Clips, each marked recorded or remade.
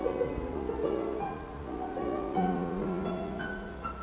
remade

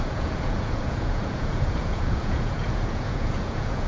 remade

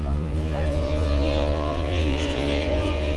remade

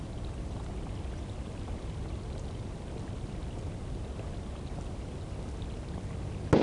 recorded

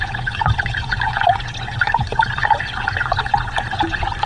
remade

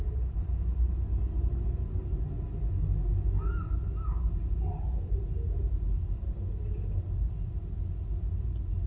recorded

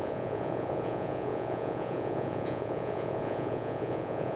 remade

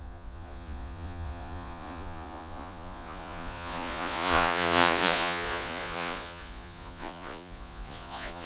remade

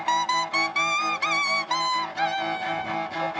recorded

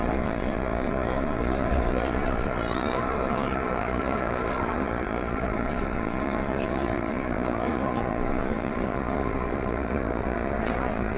remade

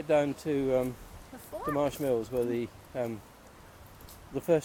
recorded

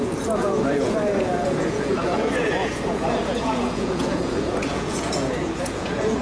remade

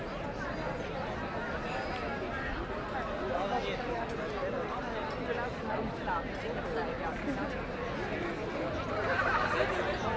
recorded